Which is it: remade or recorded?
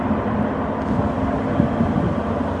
recorded